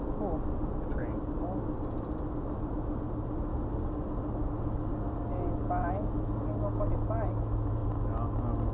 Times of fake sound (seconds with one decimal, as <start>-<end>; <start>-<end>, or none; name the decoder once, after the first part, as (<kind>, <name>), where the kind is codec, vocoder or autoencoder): none